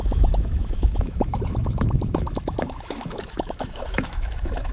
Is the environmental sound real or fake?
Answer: fake